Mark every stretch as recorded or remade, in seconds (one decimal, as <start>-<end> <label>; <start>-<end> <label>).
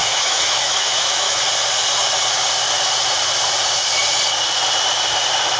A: 0.0-1.4 remade; 1.4-5.6 recorded